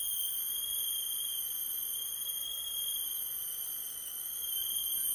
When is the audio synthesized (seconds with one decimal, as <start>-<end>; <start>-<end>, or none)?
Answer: 1.6-2.6; 4.1-5.1